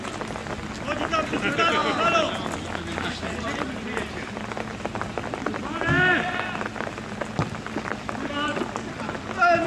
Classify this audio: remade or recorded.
recorded